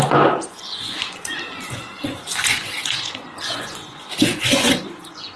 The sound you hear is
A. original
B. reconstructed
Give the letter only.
B